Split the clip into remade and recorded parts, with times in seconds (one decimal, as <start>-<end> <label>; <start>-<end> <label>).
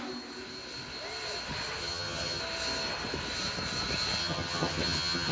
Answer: 0.0-1.8 recorded; 1.8-2.4 remade; 2.4-4.2 recorded; 4.2-5.3 remade